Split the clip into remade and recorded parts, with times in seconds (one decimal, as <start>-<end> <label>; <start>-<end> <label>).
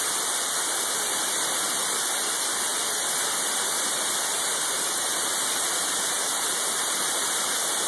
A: 0.0-7.9 recorded